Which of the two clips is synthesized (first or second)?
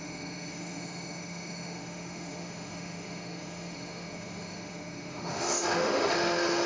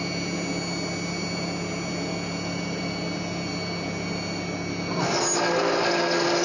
first